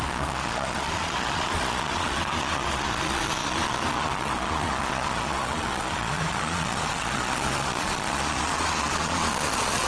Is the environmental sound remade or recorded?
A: remade